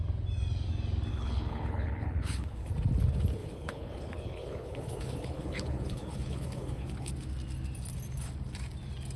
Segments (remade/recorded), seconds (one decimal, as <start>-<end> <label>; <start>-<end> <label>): 0.0-1.1 recorded; 1.1-2.7 remade; 2.7-3.4 recorded; 3.4-7.1 remade; 7.1-9.2 recorded